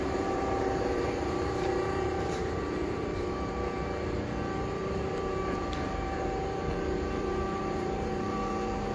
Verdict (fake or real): fake